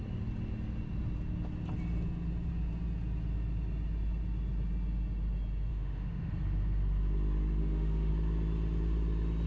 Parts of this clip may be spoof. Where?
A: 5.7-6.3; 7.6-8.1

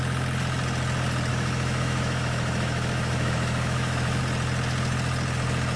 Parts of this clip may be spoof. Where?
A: 1.3-4.2

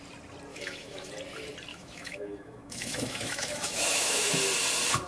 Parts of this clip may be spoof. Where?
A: 0.5-1.1; 1.7-4.3

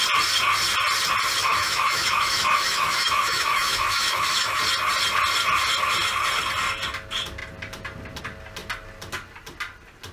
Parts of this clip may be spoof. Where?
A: 1.4-4.6